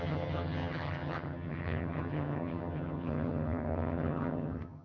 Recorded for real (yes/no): no